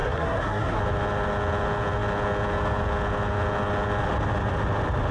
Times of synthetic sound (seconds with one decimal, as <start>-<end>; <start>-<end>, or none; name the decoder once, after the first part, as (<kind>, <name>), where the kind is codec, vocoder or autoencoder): 0.0-0.8 (codec, SNAC)

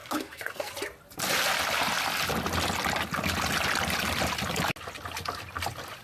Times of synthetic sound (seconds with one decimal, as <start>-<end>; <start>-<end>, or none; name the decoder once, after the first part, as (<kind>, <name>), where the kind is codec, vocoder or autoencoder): 0.0-0.7 (codec, SNAC)